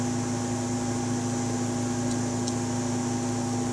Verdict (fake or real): real